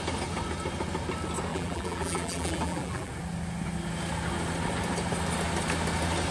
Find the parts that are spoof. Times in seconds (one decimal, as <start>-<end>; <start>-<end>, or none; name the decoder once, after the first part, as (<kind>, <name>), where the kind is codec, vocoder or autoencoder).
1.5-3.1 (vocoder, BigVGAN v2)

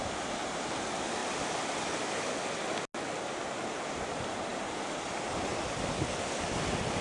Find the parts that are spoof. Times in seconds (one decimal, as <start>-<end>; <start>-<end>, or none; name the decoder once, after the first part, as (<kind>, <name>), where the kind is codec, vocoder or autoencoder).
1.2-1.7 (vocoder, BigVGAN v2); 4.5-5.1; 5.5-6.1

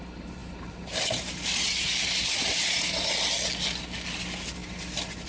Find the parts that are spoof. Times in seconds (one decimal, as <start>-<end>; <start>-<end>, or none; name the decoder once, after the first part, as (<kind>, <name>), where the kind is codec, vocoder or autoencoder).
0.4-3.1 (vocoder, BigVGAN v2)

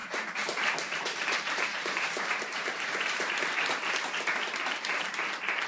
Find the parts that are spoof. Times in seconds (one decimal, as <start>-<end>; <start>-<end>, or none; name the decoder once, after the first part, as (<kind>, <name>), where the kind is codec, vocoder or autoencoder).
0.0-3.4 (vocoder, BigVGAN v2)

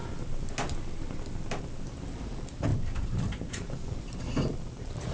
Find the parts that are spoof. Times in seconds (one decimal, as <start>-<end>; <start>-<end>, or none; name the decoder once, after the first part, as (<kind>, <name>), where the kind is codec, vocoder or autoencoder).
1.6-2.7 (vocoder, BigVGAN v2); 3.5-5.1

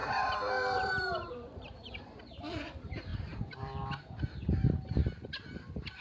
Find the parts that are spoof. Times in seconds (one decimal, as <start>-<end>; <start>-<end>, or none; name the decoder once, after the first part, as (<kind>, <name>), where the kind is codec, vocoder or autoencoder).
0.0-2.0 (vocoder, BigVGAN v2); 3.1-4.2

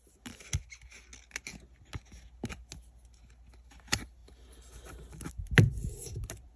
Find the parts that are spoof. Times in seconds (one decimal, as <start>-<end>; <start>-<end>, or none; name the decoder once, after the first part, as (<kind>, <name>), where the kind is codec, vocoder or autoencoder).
none

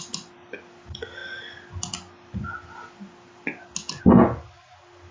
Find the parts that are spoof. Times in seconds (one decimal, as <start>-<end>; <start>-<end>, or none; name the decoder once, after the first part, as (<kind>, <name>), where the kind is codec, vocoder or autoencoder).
none